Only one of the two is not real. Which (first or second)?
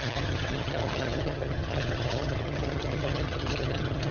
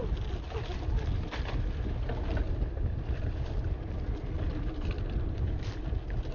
first